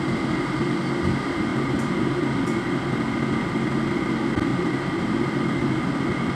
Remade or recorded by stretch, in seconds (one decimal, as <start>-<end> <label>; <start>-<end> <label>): 0.0-1.5 recorded; 1.5-2.2 remade; 2.2-4.5 recorded; 4.5-5.2 remade; 5.2-6.4 recorded

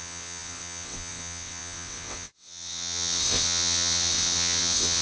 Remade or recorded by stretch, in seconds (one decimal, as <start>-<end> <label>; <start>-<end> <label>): 0.0-5.0 remade